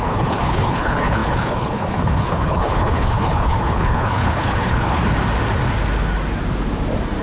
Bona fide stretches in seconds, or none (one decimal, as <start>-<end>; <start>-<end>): 5.0-7.2